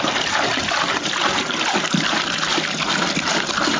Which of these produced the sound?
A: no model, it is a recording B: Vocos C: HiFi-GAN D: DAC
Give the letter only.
A